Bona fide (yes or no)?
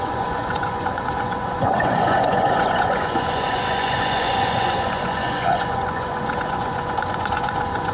no